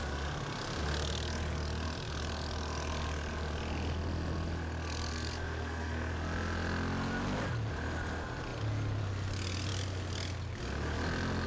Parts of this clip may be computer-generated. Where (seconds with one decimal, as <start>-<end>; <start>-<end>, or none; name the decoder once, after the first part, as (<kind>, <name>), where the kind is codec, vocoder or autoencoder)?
5.1-6.1 (codec, SNAC)